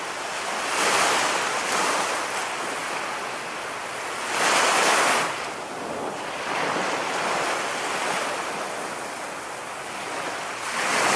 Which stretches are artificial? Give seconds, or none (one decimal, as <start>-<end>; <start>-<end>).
none